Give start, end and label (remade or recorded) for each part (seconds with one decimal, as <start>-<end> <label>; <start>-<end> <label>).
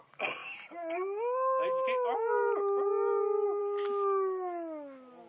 0.0-5.3 recorded